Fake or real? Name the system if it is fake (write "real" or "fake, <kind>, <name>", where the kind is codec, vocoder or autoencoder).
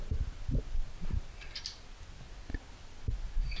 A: real